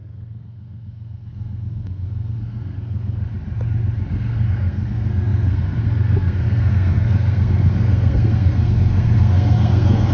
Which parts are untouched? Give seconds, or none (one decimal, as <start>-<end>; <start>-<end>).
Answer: 3.3-4.1

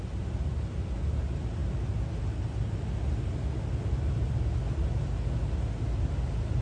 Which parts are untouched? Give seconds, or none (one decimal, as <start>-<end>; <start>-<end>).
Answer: 0.0-6.6

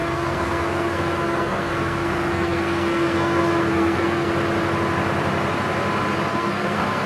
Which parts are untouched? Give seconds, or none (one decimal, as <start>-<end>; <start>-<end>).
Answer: 4.3-6.3

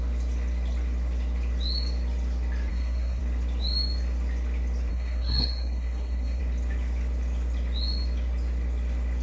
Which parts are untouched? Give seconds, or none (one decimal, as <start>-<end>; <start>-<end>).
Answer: 0.0-2.7; 3.2-4.9; 6.4-9.2